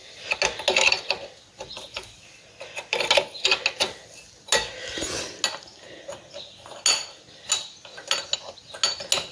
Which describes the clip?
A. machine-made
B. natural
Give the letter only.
B